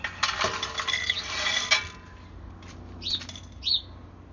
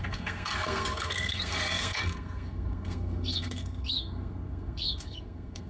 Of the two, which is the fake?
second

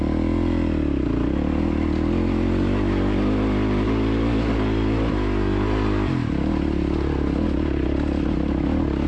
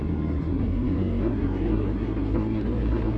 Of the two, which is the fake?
second